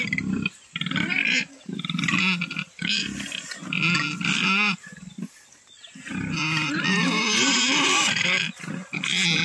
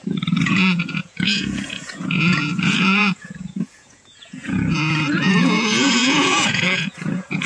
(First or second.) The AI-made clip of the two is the second